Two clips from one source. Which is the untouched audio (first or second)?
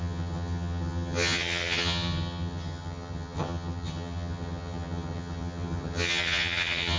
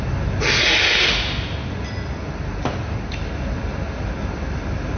second